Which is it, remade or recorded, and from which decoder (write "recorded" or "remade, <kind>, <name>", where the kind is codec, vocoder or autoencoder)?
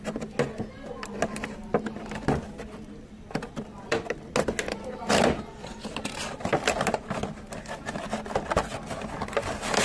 recorded